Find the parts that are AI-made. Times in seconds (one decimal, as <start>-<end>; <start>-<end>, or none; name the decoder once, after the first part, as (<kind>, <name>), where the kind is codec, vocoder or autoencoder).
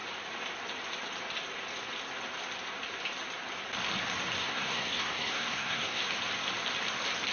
4.4-6.0 (codec, SNAC)